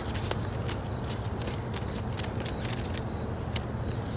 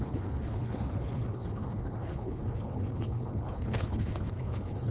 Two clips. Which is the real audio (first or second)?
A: first